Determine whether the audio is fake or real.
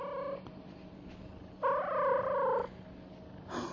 real